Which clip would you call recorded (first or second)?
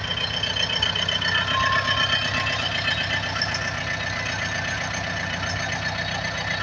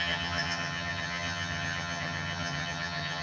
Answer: first